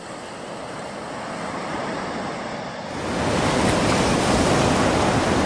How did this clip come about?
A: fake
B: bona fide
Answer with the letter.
B